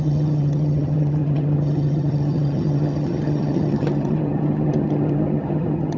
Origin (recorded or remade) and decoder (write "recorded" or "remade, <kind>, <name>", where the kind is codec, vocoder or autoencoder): remade, vocoder, HiFi-GAN